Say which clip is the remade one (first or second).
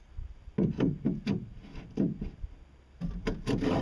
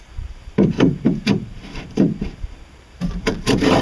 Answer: second